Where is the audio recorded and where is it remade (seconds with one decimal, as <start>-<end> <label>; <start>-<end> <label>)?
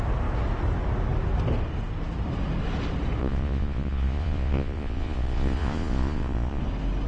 0.0-3.2 recorded; 3.2-6.6 remade; 6.6-7.1 recorded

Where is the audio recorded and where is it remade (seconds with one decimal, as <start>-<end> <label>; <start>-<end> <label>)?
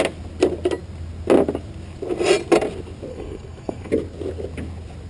0.0-3.1 recorded; 3.1-3.9 remade; 3.9-5.1 recorded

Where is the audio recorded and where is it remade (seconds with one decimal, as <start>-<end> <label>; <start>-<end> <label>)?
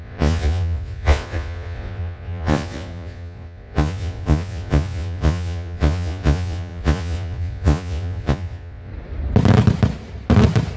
0.0-8.9 remade; 8.9-10.8 recorded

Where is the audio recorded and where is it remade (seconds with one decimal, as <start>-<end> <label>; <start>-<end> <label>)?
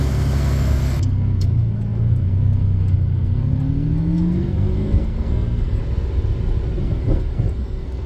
0.0-5.8 remade; 5.8-6.8 recorded; 6.8-8.1 remade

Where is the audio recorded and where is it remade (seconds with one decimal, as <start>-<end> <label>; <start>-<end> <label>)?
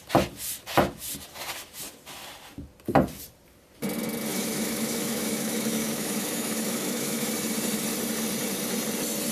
0.0-4.3 recorded; 4.3-7.3 remade; 7.3-9.3 recorded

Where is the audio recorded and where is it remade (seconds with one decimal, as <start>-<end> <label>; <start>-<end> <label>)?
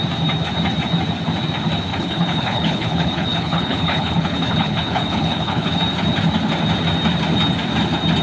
0.0-1.9 recorded; 1.9-5.8 remade; 5.8-8.2 recorded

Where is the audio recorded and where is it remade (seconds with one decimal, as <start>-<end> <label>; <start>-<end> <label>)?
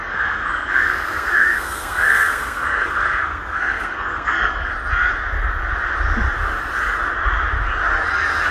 0.0-4.7 remade; 4.7-8.5 recorded